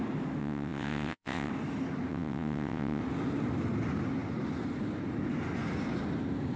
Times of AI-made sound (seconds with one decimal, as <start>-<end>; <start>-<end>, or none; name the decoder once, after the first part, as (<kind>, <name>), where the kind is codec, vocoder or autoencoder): 0.4-1.5 (vocoder, WaveNeXt); 2.1-3.0

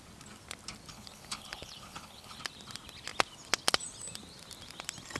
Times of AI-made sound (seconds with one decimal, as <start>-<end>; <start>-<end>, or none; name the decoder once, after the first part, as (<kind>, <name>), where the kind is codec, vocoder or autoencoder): 0.9-2.4 (codec, HILCodec)

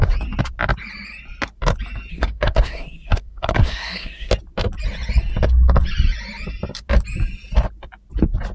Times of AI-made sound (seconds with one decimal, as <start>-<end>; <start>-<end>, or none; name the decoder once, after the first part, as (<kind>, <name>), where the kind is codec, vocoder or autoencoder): 2.1-4.3 (codec, SNAC)

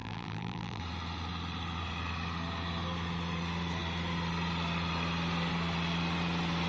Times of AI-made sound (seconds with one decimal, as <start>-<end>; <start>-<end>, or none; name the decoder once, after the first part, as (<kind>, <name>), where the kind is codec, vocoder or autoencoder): 0.0-0.8 (vocoder, BigVGAN v2)

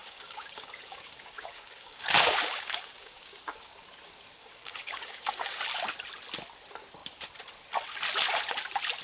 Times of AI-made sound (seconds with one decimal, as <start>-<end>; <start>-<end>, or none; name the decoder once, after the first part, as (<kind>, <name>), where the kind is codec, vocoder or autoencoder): 0.0-3.7 (codec, DAC); 4.4-5.6

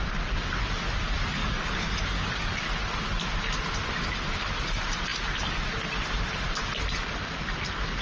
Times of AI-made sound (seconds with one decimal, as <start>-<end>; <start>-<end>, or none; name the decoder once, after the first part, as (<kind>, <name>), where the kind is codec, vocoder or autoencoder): 1.4-2.5 (codec, DAC)

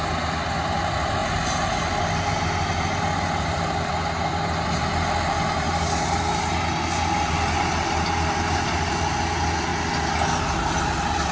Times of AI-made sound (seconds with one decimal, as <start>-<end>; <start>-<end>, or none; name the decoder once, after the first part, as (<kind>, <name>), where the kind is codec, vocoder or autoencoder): none

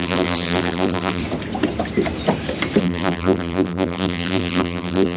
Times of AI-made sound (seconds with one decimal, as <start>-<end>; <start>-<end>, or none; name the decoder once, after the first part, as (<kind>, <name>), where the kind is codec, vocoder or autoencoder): 0.0-1.2 (vocoder, BigVGAN v2); 2.8-5.2